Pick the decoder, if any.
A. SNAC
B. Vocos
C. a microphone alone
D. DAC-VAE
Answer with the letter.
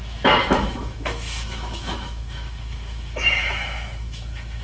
D